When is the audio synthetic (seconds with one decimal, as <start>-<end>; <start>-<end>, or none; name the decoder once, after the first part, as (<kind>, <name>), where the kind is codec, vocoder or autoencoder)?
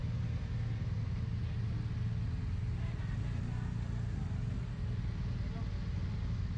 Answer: none